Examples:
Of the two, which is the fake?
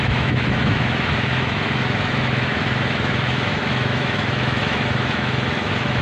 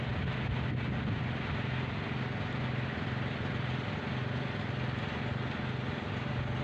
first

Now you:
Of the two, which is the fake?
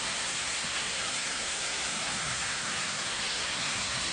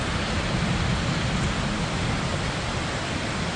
first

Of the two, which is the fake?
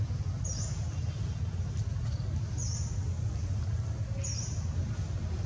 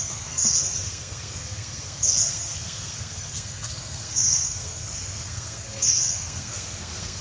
second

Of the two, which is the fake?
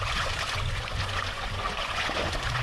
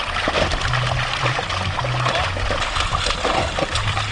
first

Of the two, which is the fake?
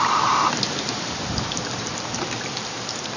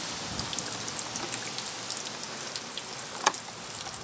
first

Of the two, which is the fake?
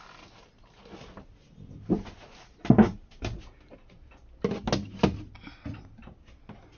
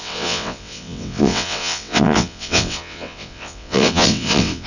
second